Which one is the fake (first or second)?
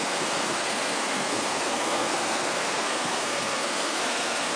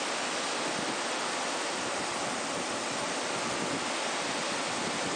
first